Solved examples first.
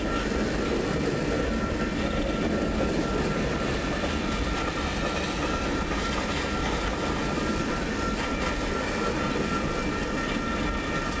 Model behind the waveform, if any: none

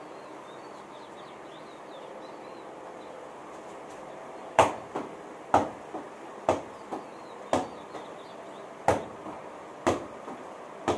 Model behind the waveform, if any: none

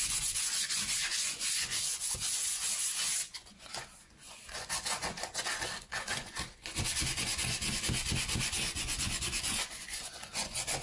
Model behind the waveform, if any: vocoder, Vocos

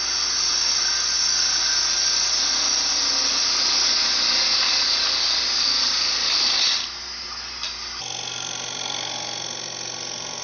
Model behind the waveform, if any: none